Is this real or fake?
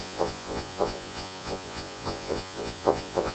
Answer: fake